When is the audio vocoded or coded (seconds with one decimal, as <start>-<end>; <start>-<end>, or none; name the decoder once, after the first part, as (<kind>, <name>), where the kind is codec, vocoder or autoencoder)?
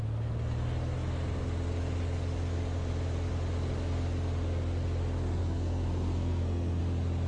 5.4-6.8 (codec, SNAC)